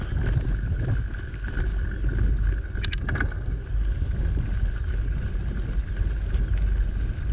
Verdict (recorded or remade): recorded